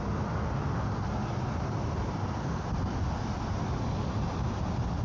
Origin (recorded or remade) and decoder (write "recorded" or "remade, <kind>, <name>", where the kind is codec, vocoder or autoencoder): recorded